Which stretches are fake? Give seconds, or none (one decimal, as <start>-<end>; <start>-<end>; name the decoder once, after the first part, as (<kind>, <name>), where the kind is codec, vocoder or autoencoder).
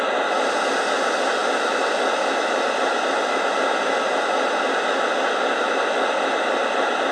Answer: none